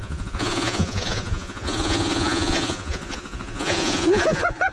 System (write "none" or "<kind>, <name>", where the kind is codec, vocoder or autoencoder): vocoder, Vocos